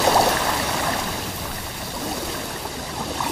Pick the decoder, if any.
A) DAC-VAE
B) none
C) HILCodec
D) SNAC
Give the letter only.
B